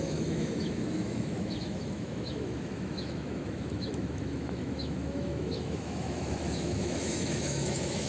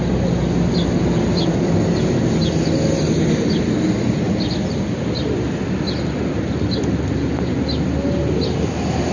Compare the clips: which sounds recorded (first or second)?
second